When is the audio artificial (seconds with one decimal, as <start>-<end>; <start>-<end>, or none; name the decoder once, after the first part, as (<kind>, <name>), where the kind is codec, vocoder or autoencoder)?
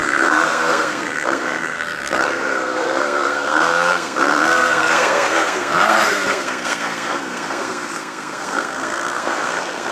0.0-9.9 (codec, SNAC)